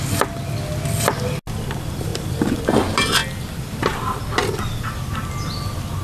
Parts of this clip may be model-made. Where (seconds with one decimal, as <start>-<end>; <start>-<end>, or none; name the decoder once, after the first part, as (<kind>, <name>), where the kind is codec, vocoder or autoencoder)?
2.1-2.8 (vocoder, BigVGAN v2); 3.2-4.8